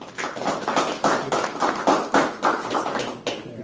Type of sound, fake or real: real